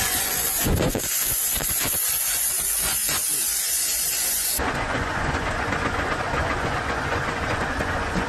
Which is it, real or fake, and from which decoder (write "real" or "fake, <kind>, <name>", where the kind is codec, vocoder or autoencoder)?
fake, vocoder, Vocos